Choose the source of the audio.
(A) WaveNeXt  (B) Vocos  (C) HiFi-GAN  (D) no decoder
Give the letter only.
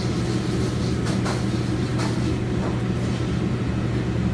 D